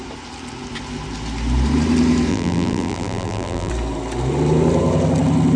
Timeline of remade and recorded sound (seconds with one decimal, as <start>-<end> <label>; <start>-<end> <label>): 0.0-2.3 recorded; 2.3-3.7 remade; 3.7-5.6 recorded